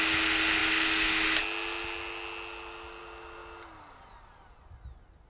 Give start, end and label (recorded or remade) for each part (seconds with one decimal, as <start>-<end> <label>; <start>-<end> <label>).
0.0-5.3 recorded